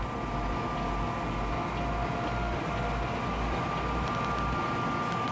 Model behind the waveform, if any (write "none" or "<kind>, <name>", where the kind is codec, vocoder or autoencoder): none